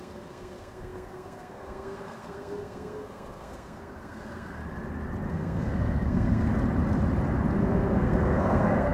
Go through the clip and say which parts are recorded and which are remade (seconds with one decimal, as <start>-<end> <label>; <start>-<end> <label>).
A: 0.0-4.6 remade; 4.6-5.3 recorded; 5.3-6.5 remade; 6.5-7.6 recorded; 7.6-8.9 remade